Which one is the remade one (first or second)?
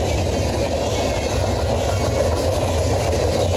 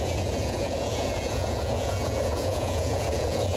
second